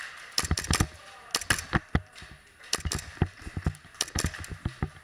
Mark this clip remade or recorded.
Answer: recorded